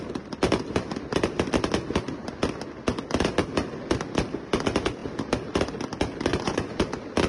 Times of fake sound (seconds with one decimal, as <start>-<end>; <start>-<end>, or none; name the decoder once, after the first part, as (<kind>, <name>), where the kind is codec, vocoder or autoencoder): 6.3-6.8 (vocoder, Vocos)